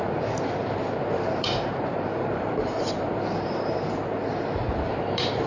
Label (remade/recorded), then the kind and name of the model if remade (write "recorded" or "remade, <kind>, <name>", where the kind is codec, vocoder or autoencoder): remade, vocoder, BigVGAN v2